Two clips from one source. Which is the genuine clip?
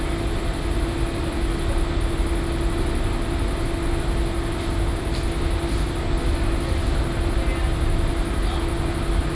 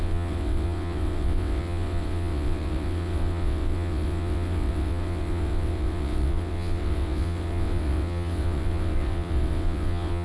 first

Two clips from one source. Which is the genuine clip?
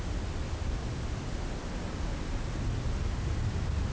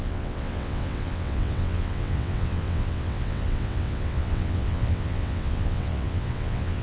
first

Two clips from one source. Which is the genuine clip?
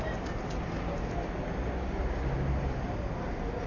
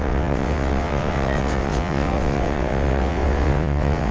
first